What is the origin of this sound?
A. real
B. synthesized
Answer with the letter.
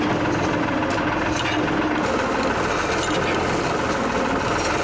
A